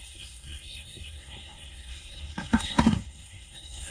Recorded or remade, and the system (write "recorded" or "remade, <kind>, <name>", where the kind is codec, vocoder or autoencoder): remade, codec, SNAC